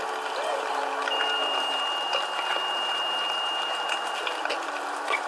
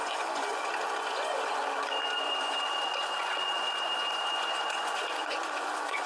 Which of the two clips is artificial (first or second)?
second